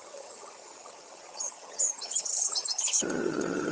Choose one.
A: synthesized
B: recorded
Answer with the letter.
A